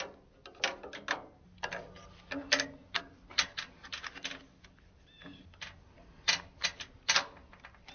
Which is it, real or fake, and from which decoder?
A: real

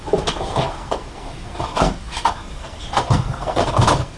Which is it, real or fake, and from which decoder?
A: fake, codec, SNAC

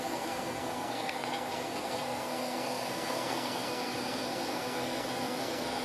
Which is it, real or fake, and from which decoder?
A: fake, codec, SNAC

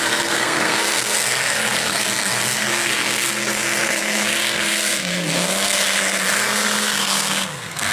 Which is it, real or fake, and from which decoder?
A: fake, codec, SNAC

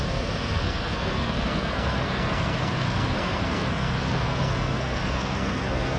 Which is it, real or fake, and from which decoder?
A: fake, codec, SNAC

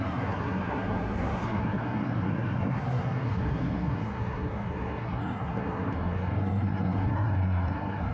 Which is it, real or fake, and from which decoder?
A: fake, codec, SNAC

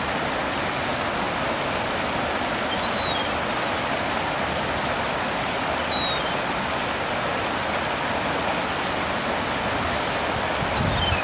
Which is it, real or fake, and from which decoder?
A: real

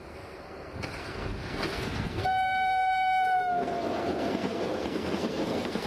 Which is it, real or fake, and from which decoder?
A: fake, codec, SNAC